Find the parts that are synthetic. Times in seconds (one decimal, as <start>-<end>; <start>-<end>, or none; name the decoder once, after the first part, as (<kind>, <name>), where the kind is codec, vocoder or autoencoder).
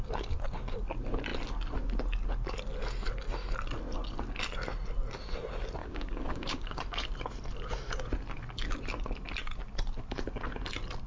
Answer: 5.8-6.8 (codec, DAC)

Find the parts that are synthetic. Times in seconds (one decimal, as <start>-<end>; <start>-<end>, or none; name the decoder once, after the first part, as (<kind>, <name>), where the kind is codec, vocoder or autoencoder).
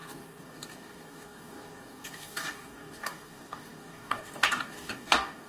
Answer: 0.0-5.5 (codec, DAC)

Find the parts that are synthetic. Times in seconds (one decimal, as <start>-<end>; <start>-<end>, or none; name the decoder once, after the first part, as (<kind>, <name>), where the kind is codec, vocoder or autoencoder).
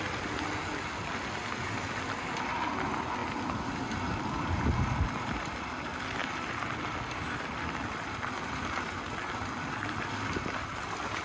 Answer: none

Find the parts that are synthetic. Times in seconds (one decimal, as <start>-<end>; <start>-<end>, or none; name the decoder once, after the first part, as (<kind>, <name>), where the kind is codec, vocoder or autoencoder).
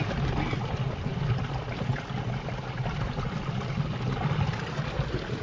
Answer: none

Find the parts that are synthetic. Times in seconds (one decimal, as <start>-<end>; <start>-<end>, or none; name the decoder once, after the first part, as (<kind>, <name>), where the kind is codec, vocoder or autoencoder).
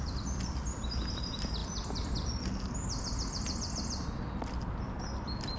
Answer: none